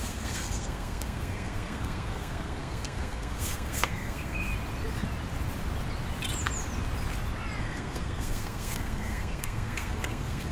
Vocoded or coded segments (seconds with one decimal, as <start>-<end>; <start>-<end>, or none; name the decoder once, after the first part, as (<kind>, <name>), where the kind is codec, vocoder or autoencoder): 0.0-4.5 (codec, SNAC); 7.6-10.5

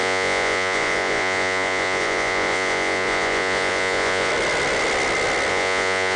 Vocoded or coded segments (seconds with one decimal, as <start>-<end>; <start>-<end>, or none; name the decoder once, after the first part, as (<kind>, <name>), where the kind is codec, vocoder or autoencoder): 0.0-4.3 (vocoder, Vocos); 5.5-6.2

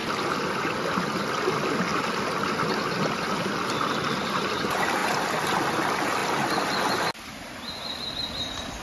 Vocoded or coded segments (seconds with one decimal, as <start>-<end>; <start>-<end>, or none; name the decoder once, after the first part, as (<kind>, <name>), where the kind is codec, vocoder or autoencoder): 0.0-0.6 (vocoder, BigVGAN v2)

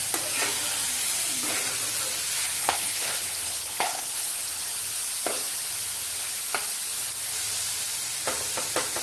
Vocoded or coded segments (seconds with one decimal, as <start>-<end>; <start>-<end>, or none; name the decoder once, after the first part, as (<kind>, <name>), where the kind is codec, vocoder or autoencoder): 2.6-4.6 (codec, HILCodec)

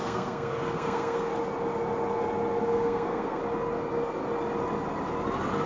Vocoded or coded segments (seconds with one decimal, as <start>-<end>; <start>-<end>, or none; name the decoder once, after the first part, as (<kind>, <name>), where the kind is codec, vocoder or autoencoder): 0.0-1.3 (codec, SNAC); 2.6-3.4

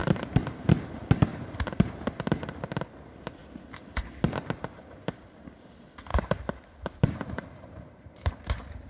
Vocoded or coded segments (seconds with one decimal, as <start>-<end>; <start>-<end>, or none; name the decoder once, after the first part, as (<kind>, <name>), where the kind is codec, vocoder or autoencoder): 0.0-0.7 (vocoder, BigVGAN v2); 1.3-1.9; 6.1-8.3

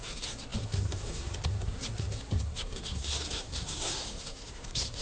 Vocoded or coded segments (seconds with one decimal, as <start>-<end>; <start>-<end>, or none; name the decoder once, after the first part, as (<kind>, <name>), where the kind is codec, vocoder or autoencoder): 0.0-5.0 (codec, SNAC)

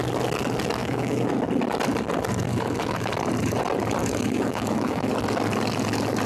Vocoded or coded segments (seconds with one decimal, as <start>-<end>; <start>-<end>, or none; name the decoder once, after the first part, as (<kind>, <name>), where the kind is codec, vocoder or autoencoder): 0.8-1.3 (autoencoder, DAC-VAE); 2.5-3.1; 4.0-5.1